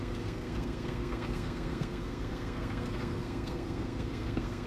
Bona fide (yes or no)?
no